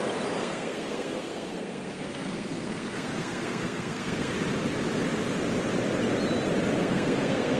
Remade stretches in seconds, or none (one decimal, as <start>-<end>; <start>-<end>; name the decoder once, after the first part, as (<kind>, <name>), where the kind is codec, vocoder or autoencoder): 0.4-4.3 (codec, SNAC); 6.8-7.6